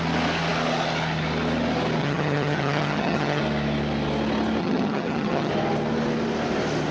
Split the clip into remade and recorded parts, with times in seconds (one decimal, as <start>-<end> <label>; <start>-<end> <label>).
0.0-2.0 recorded; 2.0-3.4 remade; 3.4-4.6 recorded; 4.6-5.5 remade; 5.5-6.9 recorded